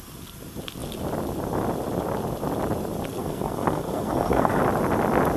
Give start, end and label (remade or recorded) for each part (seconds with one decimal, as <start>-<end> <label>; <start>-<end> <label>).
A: 0.0-3.1 recorded; 3.1-4.6 remade; 4.6-5.4 recorded